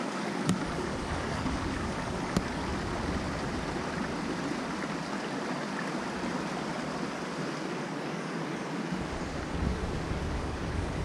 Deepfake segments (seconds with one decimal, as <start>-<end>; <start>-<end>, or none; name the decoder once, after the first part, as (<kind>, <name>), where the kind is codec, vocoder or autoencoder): 0.0-2.6 (codec, DAC); 7.8-11.0